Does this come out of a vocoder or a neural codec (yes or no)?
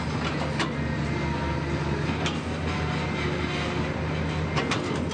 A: no